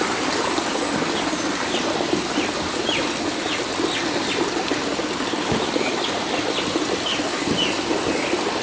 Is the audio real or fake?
real